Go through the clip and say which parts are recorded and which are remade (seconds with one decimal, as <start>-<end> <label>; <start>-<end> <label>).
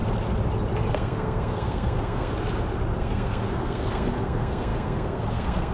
0.0-0.9 recorded; 0.9-2.3 remade; 2.3-3.0 recorded; 3.0-5.7 remade